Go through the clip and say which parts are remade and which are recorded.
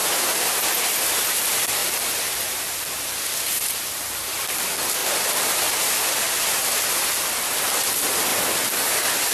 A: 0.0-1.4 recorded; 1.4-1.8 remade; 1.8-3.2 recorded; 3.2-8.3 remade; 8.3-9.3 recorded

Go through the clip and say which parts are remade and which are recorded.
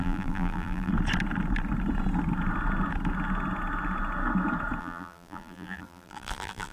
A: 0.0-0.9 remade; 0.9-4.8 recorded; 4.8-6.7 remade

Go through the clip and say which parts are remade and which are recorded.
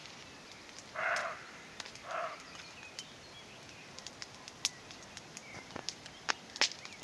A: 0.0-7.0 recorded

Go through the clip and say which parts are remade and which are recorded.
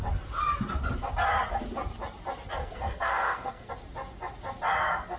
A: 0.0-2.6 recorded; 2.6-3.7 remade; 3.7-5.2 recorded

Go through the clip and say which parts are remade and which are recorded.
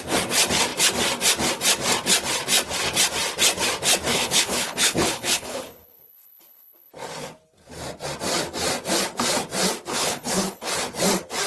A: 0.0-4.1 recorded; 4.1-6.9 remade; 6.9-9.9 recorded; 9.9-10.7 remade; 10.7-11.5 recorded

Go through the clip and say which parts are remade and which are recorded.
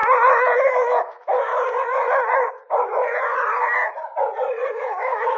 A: 0.0-0.7 recorded; 0.7-1.5 remade; 1.5-4.7 recorded; 4.7-5.4 remade